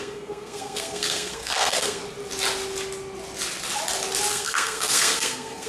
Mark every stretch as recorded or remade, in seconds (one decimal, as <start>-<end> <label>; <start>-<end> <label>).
0.0-2.0 remade; 2.0-4.3 recorded; 4.3-5.7 remade